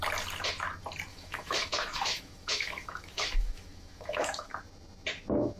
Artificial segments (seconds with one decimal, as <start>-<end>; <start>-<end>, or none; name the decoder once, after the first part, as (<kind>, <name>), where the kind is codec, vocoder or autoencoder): 1.1-4.5 (autoencoder, DAC-VAE)